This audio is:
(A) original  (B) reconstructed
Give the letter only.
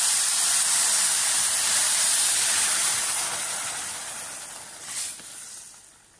A